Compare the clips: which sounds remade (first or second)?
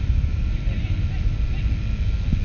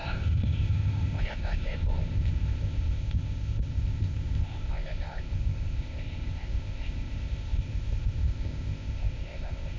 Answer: second